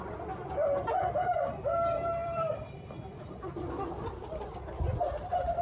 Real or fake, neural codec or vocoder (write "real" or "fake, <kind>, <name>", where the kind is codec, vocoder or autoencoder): fake, vocoder, BigVGAN v2